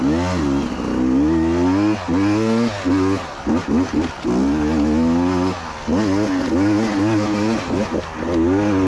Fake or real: real